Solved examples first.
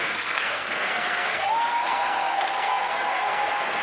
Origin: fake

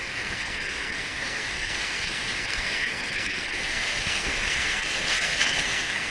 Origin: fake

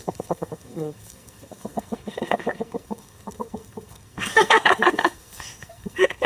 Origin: fake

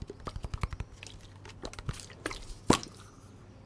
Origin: real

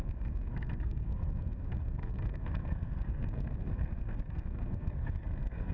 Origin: fake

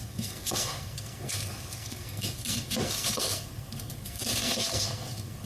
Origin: fake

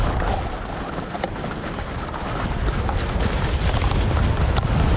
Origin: real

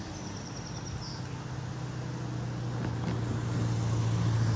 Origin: real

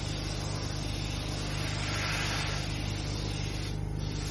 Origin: real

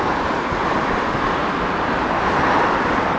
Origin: real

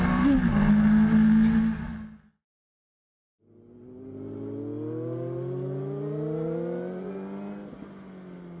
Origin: real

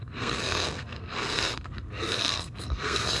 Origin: fake